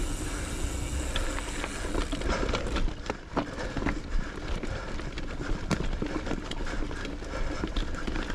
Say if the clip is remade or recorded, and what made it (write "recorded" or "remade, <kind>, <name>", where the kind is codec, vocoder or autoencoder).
recorded